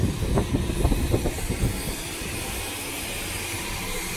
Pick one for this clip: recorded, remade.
recorded